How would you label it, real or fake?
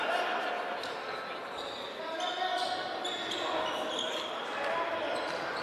real